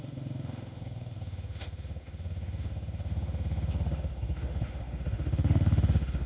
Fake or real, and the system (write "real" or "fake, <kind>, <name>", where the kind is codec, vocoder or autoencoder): fake, autoencoder, DAC-VAE